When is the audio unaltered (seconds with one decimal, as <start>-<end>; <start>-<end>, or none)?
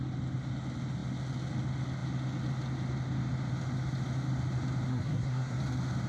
0.0-4.9; 5.6-6.1